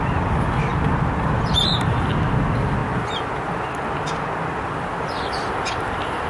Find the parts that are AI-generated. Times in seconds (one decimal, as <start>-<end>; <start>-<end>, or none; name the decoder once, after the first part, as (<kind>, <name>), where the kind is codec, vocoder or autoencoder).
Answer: none